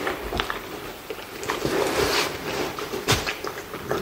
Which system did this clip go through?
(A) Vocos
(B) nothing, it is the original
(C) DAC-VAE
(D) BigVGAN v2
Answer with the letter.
D